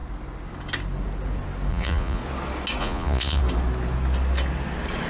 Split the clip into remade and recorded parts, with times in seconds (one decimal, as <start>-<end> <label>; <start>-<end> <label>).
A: 0.0-1.7 recorded; 1.7-2.2 remade; 2.2-2.8 recorded; 2.8-3.4 remade; 3.4-5.1 recorded